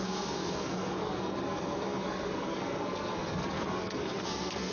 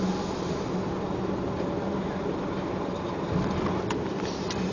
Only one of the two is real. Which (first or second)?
second